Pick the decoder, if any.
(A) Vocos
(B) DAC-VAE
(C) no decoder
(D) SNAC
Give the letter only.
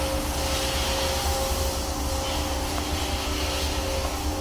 C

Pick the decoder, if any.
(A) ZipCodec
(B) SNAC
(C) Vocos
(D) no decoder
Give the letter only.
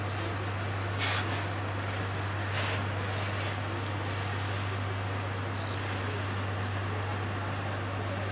D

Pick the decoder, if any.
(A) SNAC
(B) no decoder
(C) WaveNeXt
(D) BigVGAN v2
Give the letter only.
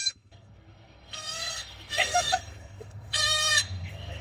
A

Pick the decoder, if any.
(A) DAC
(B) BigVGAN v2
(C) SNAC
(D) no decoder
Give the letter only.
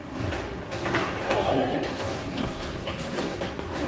C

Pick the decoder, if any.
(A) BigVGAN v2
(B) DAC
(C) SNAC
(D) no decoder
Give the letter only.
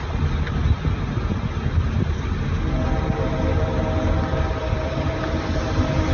D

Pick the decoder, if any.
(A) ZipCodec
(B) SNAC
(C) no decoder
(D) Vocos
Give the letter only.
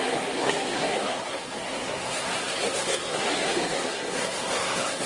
B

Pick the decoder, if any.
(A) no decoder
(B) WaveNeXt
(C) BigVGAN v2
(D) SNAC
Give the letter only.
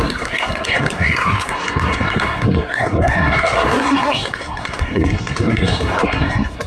D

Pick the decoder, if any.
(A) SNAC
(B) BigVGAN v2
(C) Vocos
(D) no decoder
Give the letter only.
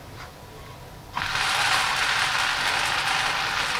D